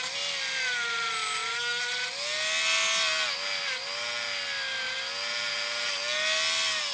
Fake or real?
real